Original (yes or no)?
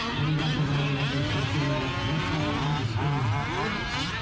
yes